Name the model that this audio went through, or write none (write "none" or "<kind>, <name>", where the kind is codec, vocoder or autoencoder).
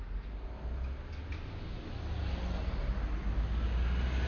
none